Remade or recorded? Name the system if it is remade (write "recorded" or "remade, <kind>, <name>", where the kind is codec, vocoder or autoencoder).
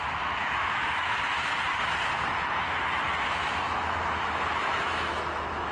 remade, autoencoder, DAC-VAE